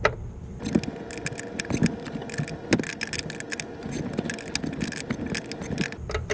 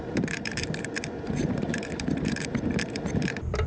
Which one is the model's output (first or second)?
second